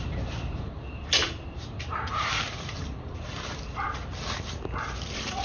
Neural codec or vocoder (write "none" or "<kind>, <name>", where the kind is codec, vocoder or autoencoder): vocoder, BigVGAN v2